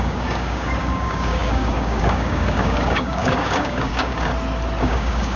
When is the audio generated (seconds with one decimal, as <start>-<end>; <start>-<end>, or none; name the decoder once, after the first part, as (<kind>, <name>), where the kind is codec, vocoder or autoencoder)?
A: 0.0-4.3 (codec, DAC); 4.8-5.4